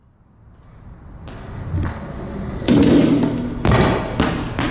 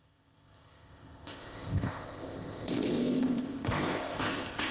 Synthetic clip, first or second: second